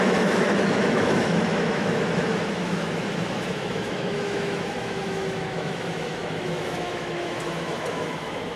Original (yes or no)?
no